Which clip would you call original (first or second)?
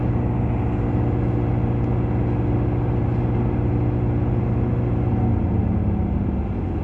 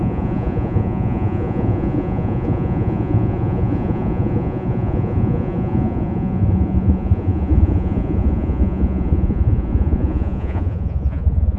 first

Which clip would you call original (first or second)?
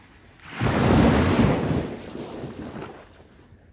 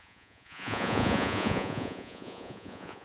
first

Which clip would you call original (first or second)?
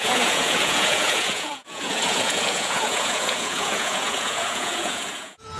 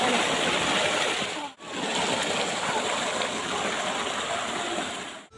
second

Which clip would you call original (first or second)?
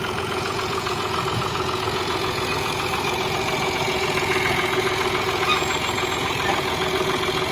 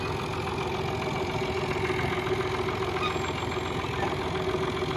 second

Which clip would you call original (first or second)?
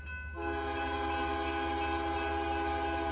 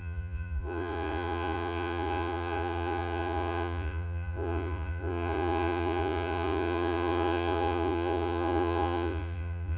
first